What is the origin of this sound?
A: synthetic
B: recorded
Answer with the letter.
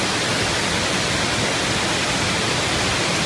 B